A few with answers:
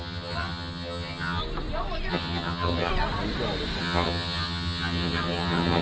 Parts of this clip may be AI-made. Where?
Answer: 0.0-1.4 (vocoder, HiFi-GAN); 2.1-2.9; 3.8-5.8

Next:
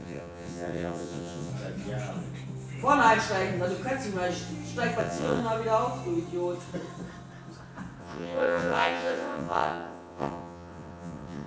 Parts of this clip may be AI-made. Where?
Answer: 0.0-1.5 (vocoder, WaveNeXt); 5.0-5.4; 8.0-11.5

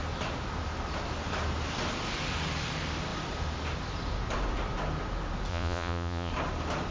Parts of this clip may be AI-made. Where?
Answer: 5.5-6.3 (vocoder, Vocos)

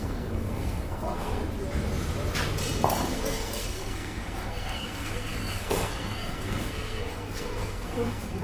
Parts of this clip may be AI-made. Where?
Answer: 0.0-1.4 (codec, SNAC); 3.1-8.4

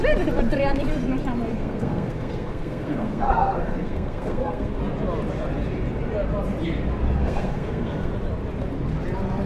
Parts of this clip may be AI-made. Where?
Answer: 1.5-4.8 (codec, SNAC); 7.2-8.1